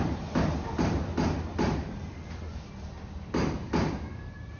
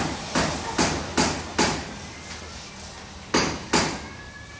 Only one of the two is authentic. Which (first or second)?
second